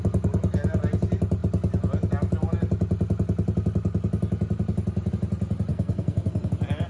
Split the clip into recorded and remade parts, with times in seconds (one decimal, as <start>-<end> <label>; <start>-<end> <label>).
0.0-5.7 recorded; 5.7-6.5 remade; 6.5-6.9 recorded